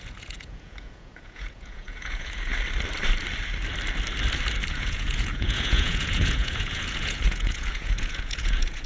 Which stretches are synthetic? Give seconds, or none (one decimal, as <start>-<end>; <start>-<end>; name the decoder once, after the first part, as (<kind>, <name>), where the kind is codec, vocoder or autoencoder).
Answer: 0.0-2.5 (vocoder, Vocos); 4.7-8.9